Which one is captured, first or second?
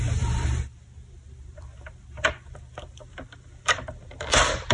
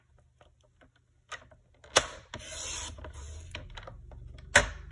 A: second